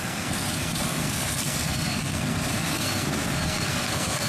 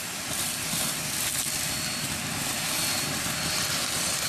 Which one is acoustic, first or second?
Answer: second